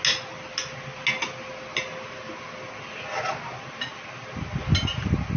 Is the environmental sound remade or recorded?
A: recorded